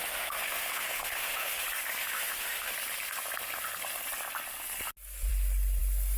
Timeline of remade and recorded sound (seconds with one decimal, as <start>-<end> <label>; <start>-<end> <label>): 0.0-1.6 remade; 1.6-2.0 recorded; 2.0-2.7 remade; 2.7-6.2 recorded